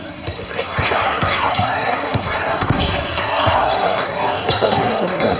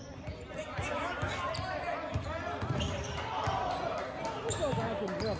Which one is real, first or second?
second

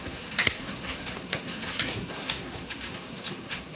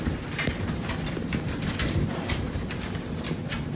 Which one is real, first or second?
second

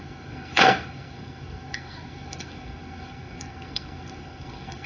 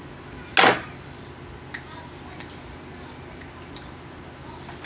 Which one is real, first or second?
second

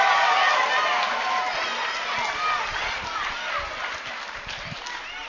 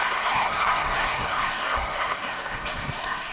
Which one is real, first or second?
first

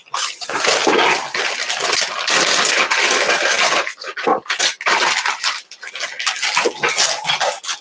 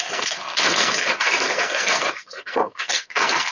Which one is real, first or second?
first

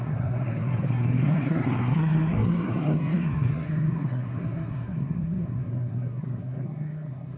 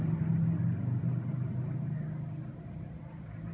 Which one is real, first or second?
second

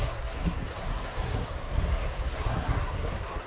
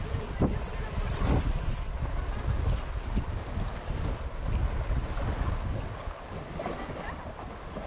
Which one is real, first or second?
second